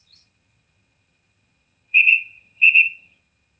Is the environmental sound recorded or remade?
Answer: remade